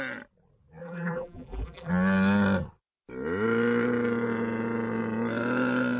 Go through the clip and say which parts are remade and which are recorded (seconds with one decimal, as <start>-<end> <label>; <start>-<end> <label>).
0.0-0.8 recorded; 0.8-1.9 remade; 1.9-6.0 recorded